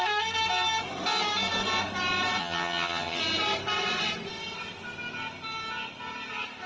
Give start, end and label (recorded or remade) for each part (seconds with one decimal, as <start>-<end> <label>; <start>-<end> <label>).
0.0-2.4 recorded; 2.4-3.2 remade; 3.2-6.7 recorded